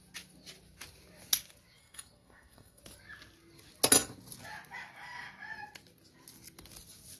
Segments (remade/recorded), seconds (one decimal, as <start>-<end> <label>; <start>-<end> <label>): 0.0-1.8 recorded; 1.8-2.8 remade; 2.8-7.2 recorded